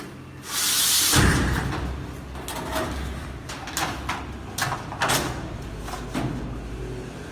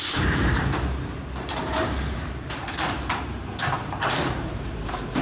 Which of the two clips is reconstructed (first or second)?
second